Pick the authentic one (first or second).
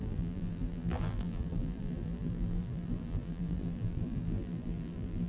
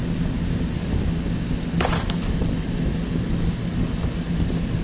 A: second